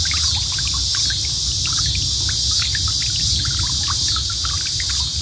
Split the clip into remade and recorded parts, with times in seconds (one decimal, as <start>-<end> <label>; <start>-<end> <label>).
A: 0.0-5.2 recorded